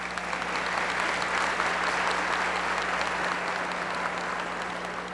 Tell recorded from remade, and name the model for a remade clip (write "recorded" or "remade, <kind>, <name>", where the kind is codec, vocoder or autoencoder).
recorded